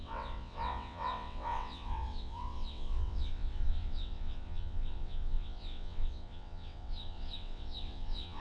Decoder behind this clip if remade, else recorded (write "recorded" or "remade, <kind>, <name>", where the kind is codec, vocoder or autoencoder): remade, vocoder, WaveNeXt